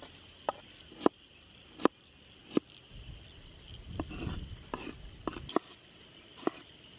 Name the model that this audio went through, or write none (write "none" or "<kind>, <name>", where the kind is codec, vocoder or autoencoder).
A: none